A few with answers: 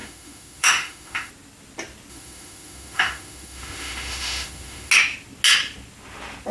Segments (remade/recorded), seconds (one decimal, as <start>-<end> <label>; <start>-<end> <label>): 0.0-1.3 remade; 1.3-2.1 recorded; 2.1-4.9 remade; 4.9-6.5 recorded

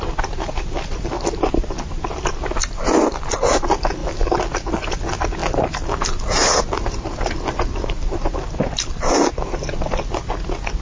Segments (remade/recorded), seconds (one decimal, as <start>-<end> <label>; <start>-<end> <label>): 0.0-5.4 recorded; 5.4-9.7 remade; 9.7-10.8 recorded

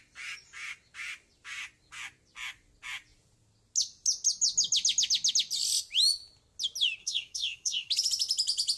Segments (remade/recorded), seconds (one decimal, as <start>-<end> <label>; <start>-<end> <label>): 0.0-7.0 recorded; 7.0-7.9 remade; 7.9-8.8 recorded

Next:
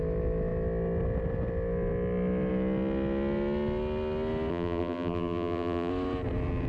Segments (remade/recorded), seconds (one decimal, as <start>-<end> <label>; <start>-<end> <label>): 0.0-4.5 recorded; 4.5-5.9 remade; 5.9-6.7 recorded

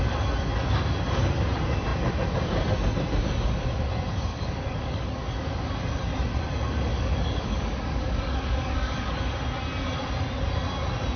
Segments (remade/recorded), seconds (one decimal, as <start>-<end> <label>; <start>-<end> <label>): 0.0-4.3 recorded; 4.3-5.5 remade; 5.5-6.9 recorded; 6.9-9.2 remade; 9.2-11.2 recorded